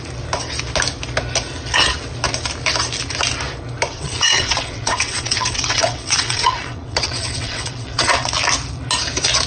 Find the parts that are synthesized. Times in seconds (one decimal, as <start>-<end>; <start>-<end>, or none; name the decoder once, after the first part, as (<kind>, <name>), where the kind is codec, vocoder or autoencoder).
3.9-8.3 (vocoder, WaveNeXt)